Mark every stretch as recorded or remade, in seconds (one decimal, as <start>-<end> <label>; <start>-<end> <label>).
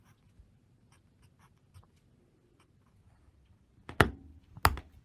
0.0-5.0 recorded